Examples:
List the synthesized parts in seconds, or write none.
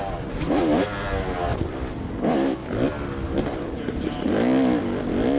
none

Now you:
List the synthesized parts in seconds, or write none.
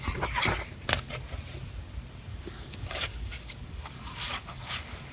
2.3-5.1 (codec, DAC)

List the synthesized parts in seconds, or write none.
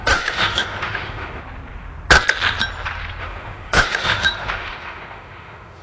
0.0-1.4 (autoencoder, DAC-VAE); 3.2-5.8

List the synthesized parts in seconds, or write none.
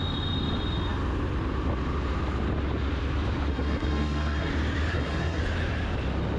3.5-4.5 (codec, SNAC); 4.9-5.4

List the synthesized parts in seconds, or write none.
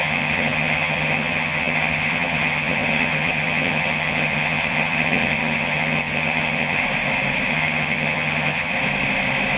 0.0-6.8 (vocoder, HiFi-GAN); 7.5-8.7